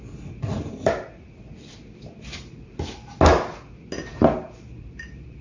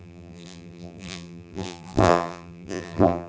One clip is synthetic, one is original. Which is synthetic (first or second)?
second